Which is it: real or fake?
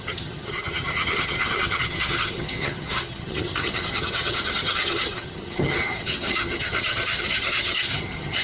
fake